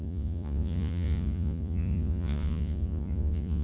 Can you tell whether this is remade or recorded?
remade